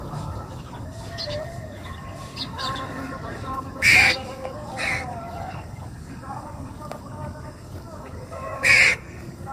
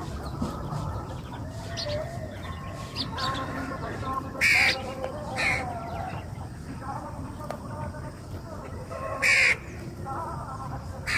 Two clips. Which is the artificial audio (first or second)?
first